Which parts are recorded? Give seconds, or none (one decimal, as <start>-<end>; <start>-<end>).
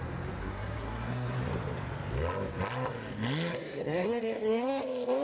0.0-0.4; 1.4-3.5; 4.8-5.2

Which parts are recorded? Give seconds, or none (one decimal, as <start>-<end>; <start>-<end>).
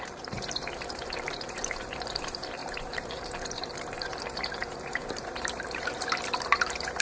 none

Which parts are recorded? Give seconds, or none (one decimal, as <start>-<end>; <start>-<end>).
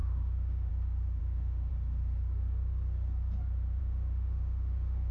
0.7-1.2; 1.7-3.8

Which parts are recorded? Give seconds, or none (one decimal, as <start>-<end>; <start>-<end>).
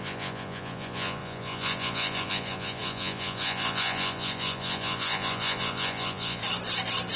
6.4-7.2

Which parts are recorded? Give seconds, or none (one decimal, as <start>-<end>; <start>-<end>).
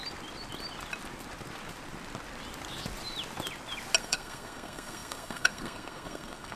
0.0-4.0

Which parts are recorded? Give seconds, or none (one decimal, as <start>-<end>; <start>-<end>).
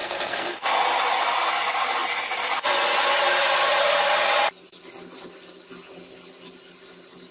0.7-7.3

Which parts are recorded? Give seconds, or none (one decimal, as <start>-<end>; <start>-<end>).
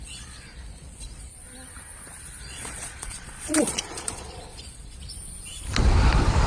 1.3-2.4; 5.1-6.5